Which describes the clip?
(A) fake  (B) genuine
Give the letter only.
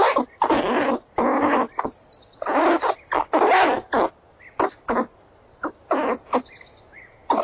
B